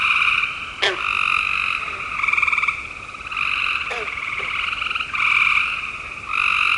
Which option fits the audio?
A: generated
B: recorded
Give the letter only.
B